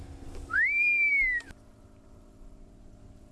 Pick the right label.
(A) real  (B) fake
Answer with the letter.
A